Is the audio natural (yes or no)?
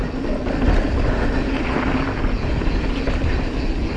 yes